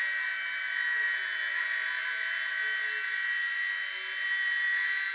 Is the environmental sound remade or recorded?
recorded